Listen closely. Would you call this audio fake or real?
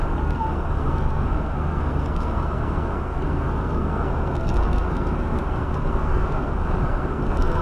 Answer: fake